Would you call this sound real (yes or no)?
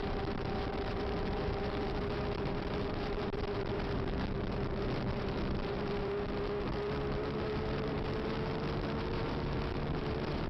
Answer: no